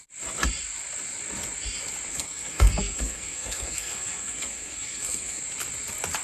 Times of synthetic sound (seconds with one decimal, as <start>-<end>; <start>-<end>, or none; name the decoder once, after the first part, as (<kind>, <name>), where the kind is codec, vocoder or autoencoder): 2.1-5.4 (codec, SNAC)

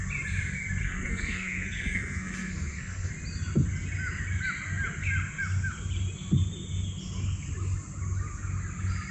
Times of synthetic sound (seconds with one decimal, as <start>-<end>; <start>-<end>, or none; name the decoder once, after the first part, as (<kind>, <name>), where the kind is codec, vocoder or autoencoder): 0.8-3.1 (codec, SNAC)

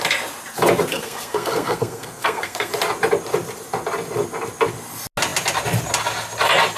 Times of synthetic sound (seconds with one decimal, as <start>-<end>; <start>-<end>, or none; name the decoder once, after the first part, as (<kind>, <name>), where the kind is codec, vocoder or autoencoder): 0.9-2.7 (codec, SNAC)

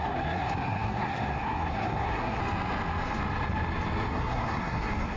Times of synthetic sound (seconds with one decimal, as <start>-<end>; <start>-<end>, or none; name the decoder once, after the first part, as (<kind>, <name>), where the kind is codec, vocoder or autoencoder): 0.0-2.4 (codec, SNAC); 4.1-5.2

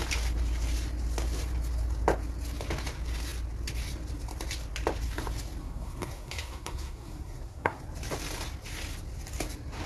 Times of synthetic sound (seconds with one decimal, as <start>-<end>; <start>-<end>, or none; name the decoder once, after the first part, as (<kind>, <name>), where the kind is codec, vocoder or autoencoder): 5.6-7.8 (codec, SNAC)

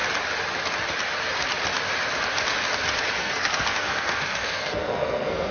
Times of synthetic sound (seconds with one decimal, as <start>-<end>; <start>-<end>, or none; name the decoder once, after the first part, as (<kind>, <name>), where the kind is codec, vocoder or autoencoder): 3.2-5.5 (codec, SNAC)

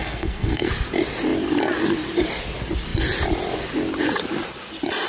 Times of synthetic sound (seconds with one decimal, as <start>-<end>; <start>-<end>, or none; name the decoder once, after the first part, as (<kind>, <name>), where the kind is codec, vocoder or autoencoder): 0.0-0.7 (codec, SNAC)